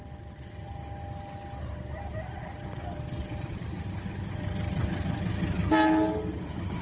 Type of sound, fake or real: real